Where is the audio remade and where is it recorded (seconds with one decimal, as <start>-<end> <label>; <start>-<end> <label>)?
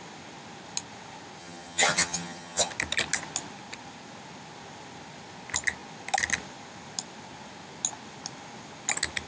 0.0-1.4 recorded; 1.4-2.7 remade; 2.7-9.3 recorded